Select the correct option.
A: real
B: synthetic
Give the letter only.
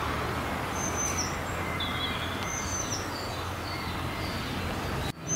A